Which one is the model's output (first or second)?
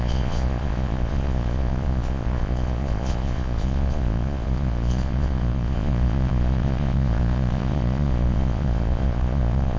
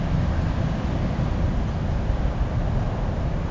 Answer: first